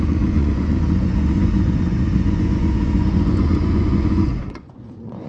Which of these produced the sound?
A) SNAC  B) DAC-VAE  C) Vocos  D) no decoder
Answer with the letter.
C